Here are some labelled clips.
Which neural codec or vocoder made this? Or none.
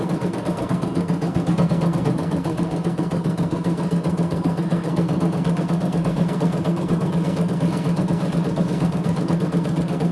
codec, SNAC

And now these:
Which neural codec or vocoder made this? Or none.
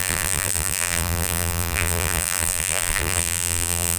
vocoder, BigVGAN v2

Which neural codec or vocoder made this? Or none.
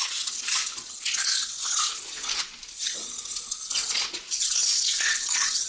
vocoder, Vocos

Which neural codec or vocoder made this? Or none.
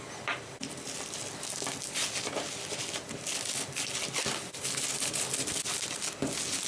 none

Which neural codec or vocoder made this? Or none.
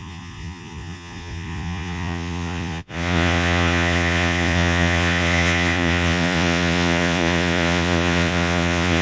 vocoder, Vocos